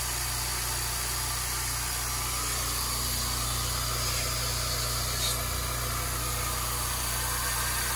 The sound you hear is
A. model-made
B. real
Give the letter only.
B